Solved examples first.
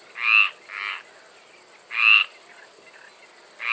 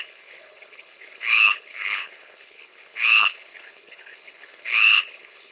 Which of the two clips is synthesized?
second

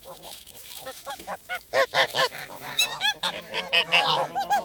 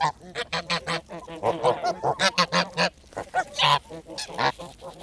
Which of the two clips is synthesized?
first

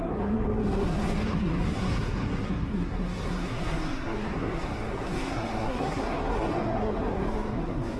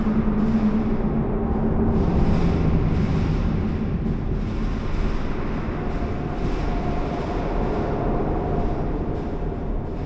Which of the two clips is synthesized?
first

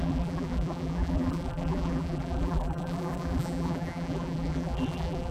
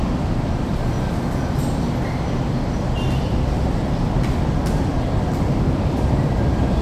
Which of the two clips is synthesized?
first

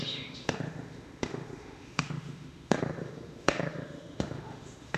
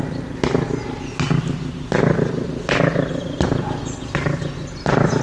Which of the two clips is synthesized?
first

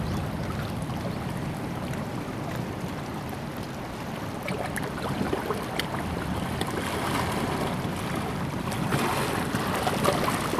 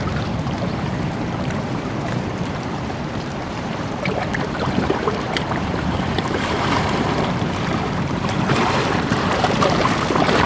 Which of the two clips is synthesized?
second